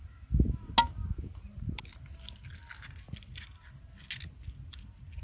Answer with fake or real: real